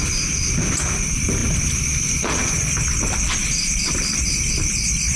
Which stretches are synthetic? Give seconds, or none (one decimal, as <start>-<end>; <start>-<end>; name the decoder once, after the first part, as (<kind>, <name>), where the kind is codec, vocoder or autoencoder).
0.0-1.4 (vocoder, BigVGAN v2); 2.1-5.2